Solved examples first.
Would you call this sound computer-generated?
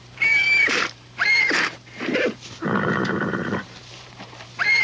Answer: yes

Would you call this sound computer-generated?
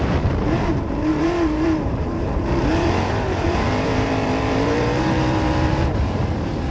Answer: yes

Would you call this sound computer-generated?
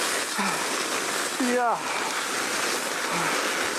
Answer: no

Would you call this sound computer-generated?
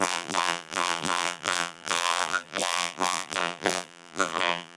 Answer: yes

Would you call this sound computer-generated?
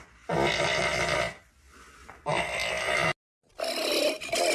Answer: no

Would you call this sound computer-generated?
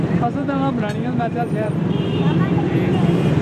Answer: yes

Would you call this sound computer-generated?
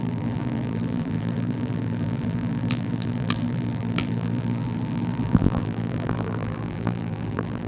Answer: yes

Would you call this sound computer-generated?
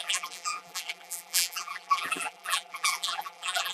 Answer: yes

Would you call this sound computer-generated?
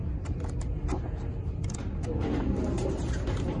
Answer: no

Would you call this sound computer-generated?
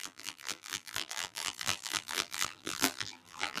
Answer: yes